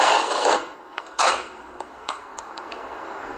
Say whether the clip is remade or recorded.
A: remade